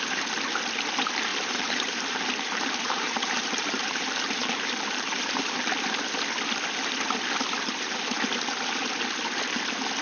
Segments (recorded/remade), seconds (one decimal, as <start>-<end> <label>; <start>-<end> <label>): 0.0-1.3 recorded; 1.3-5.7 remade; 5.7-10.0 recorded